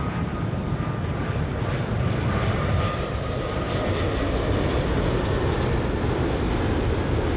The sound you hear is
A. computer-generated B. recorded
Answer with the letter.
B